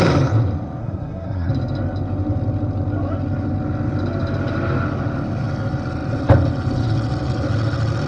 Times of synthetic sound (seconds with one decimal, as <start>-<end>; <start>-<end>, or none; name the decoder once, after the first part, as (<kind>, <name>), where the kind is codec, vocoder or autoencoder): 0.8-1.5 (codec, SNAC)